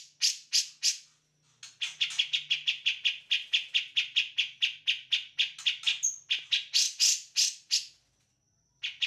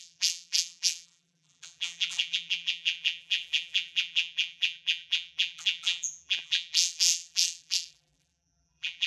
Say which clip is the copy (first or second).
second